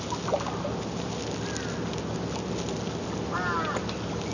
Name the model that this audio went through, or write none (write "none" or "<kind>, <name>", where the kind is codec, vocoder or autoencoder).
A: none